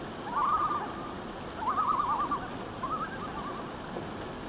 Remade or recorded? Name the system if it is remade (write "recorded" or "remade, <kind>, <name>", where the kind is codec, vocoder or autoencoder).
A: recorded